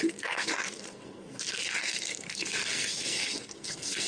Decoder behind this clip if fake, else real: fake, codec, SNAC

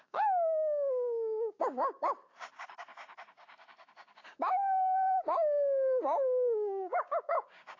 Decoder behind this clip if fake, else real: fake, codec, DAC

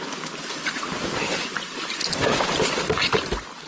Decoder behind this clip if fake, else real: real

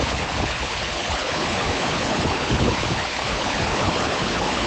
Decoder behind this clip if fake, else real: fake, codec, HILCodec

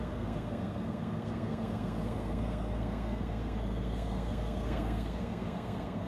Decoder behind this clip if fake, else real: fake, codec, SNAC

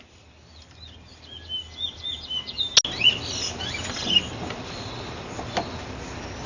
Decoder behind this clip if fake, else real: real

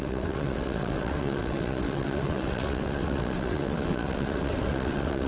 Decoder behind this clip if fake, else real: fake, vocoder, WaveNeXt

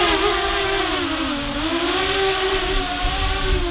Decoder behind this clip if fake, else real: real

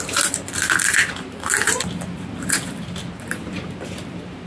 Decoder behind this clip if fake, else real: fake, vocoder, BigVGAN v2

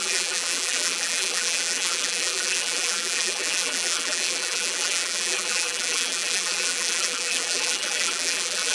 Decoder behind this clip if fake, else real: fake, vocoder, BigVGAN v2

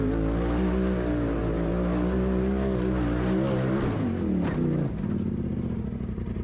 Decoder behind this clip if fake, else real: real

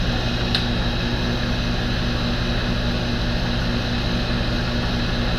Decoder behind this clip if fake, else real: real